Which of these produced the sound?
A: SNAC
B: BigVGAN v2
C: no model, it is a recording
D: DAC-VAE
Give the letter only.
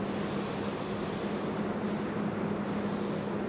C